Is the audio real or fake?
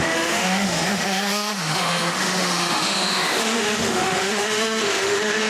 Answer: fake